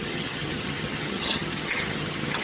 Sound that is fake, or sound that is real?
fake